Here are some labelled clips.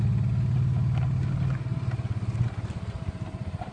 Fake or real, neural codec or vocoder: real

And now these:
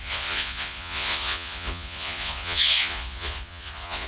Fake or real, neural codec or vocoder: fake, vocoder, Vocos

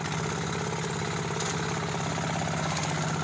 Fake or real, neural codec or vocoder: real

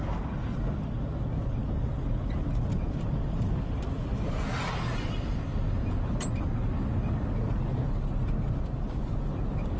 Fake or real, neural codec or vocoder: real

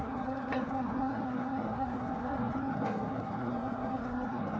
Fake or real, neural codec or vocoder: fake, codec, SNAC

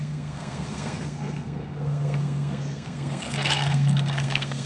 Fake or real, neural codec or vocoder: fake, codec, SNAC